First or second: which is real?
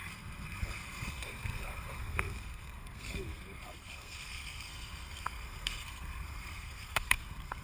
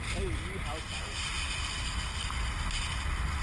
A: second